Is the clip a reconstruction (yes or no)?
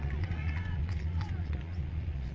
yes